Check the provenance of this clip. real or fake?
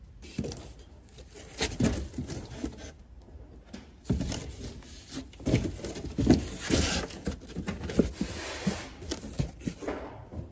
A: real